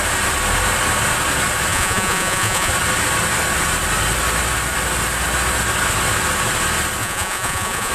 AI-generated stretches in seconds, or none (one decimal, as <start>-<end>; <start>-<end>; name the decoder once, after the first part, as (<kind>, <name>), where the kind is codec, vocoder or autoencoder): 1.7-2.7 (vocoder, Vocos); 7.0-7.9